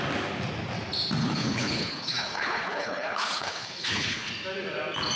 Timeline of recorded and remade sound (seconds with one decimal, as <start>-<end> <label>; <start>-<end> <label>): 0.0-1.2 recorded; 1.2-4.3 remade; 4.3-5.2 recorded